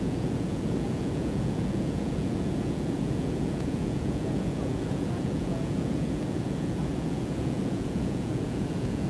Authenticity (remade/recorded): remade